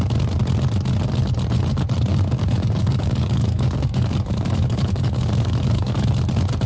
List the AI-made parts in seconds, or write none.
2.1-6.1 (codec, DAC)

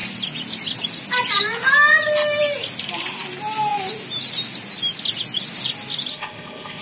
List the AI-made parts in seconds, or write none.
6.1-6.8 (codec, ZipCodec)

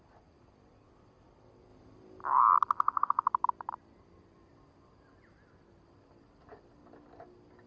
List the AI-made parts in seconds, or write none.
0.0-1.7 (vocoder, BigVGAN v2); 2.4-7.7

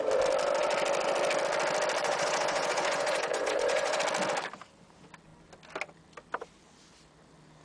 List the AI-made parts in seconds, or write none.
2.0-4.0 (vocoder, Vocos)

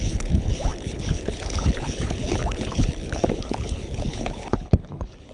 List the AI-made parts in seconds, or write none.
0.0-5.3 (codec, HILCodec)

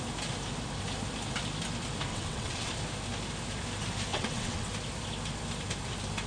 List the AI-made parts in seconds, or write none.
2.1-2.7 (vocoder, WaveNeXt); 4.1-4.7

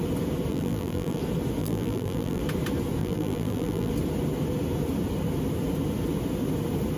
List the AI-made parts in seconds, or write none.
0.5-1.2 (vocoder, BigVGAN v2); 1.6-2.4; 3.0-3.9